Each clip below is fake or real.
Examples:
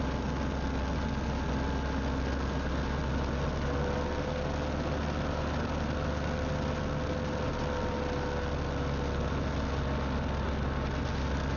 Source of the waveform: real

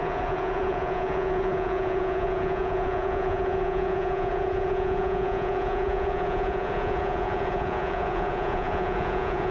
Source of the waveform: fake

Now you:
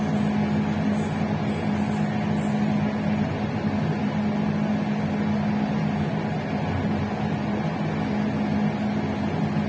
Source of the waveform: real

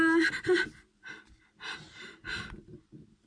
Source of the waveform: real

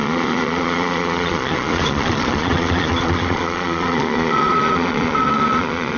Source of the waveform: fake